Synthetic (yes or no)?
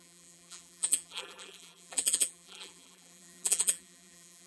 yes